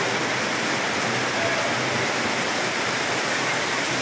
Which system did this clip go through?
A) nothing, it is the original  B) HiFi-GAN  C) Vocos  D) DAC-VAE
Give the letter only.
A